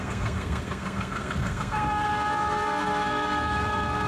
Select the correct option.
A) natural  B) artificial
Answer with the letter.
B